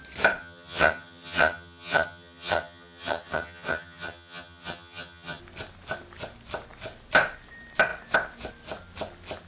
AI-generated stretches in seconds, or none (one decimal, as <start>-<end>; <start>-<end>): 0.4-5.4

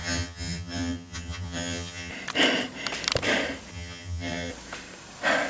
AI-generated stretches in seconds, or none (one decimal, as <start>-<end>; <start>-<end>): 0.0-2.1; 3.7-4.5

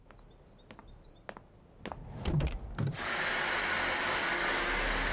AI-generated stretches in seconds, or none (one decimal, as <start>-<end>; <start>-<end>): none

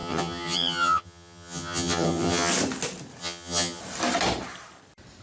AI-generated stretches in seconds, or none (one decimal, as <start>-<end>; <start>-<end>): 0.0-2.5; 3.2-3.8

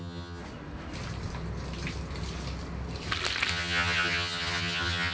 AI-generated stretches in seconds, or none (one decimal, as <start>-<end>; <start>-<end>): 0.0-0.4; 3.5-5.1

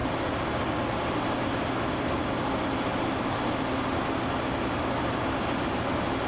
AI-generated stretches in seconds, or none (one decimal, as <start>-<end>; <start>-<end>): none

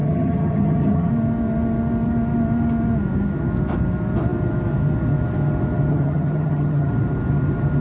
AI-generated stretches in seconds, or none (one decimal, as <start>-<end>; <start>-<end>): 0.0-1.1; 5.9-6.9

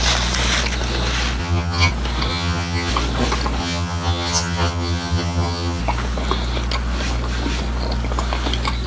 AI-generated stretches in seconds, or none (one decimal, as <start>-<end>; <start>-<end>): 1.4-1.9; 2.3-2.9; 3.6-5.8